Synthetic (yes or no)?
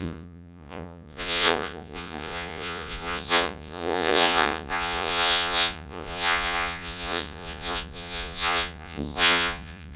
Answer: yes